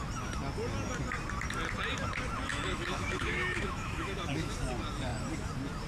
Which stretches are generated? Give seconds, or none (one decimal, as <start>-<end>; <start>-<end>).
2.5-4.5